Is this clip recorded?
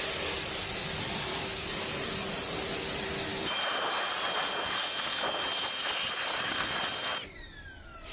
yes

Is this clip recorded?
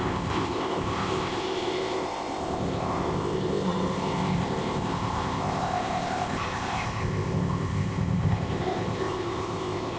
no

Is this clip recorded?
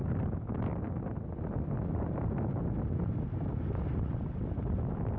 yes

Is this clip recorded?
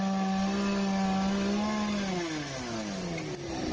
yes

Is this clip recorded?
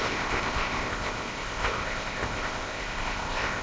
no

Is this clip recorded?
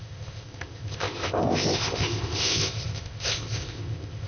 no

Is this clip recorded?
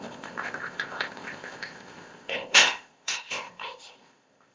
no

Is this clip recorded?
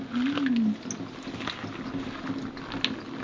yes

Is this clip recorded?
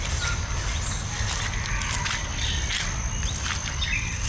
yes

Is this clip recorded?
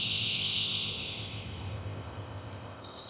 no